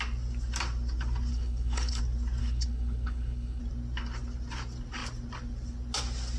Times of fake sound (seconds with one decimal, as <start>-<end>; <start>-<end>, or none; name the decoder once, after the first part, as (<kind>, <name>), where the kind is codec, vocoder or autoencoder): 1.3-2.0 (codec, HILCodec); 2.4-3.6